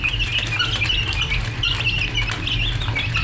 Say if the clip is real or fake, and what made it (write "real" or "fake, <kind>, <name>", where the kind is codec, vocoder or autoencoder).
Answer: real